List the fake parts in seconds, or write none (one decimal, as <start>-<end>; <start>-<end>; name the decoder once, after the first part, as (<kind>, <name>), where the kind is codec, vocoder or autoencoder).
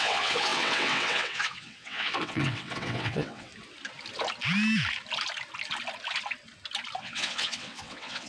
0.0-3.5 (vocoder, WaveNeXt); 7.0-8.3